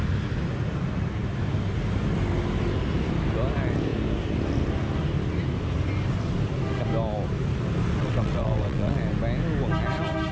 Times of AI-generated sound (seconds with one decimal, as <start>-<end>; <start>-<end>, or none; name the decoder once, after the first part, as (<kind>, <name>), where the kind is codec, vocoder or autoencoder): 8.0-9.0 (vocoder, WaveNeXt)